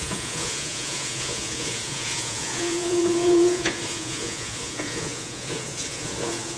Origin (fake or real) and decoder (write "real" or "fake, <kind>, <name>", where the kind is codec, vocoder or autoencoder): fake, vocoder, Vocos